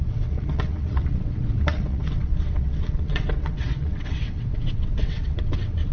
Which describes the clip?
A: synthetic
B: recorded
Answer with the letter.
A